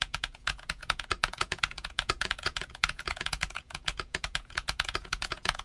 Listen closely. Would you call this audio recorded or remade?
remade